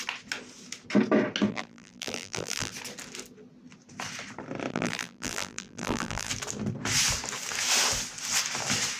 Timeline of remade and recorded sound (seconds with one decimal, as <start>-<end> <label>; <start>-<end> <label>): 0.0-1.5 recorded; 1.5-2.7 remade; 2.7-4.7 recorded; 4.7-6.3 remade; 6.3-9.0 recorded